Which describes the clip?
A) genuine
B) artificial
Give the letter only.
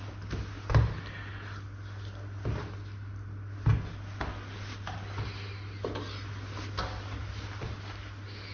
A